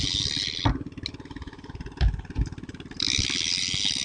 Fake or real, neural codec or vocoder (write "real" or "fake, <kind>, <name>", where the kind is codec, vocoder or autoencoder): real